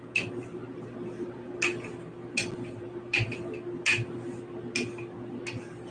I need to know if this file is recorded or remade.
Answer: recorded